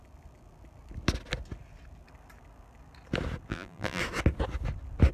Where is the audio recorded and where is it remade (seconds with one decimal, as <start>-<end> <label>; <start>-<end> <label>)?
0.0-3.5 recorded; 3.5-4.0 remade; 4.0-5.1 recorded